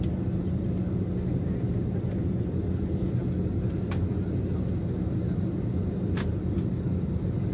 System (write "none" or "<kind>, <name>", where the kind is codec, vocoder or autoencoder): none